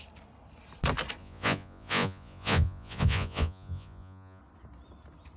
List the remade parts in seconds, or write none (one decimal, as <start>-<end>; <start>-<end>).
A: 1.2-4.4